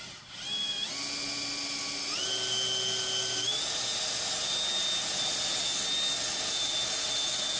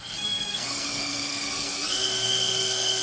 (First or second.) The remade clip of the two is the second